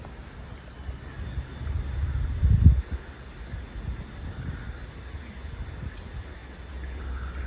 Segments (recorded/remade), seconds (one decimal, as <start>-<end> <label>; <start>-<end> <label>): 0.0-7.5 recorded